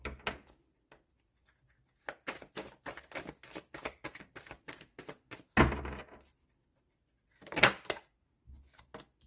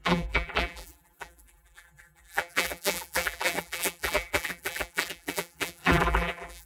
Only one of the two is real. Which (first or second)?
first